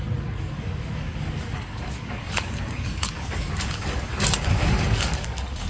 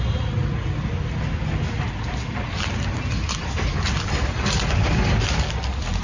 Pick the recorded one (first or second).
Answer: second